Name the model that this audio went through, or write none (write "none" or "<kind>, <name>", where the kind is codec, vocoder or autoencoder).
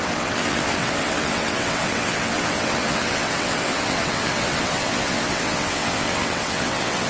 vocoder, WaveNeXt